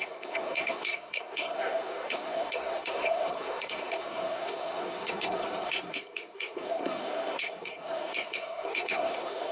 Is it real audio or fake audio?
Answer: fake